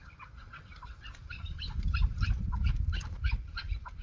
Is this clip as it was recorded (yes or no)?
no